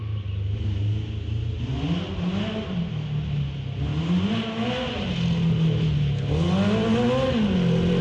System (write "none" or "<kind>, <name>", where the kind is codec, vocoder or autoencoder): none